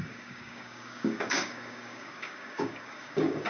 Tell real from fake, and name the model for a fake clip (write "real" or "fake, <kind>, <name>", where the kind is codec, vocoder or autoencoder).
fake, codec, DAC